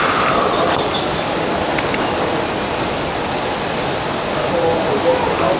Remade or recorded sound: recorded